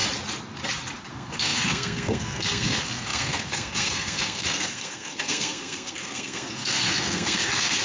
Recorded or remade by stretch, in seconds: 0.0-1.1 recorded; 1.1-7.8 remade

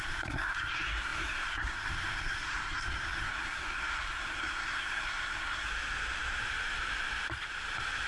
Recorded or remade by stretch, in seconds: 0.0-5.7 remade; 5.7-8.1 recorded